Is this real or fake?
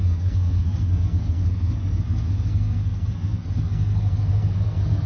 fake